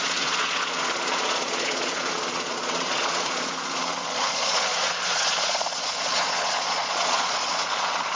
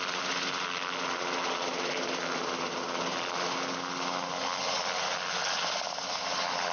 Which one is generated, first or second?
first